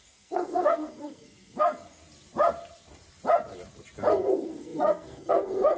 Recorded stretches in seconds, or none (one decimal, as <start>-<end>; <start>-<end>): 2.0-4.1